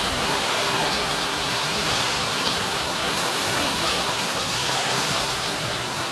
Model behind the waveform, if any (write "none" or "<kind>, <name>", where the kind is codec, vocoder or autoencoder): codec, SNAC